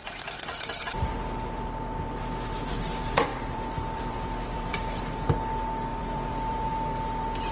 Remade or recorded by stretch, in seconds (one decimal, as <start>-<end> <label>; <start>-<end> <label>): 0.0-3.3 recorded; 3.3-5.0 remade; 5.0-5.9 recorded; 5.9-6.7 remade; 6.7-7.5 recorded